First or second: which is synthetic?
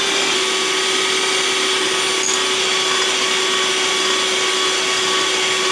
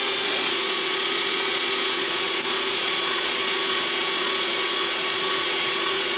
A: second